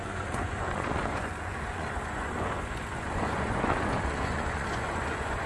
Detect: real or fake fake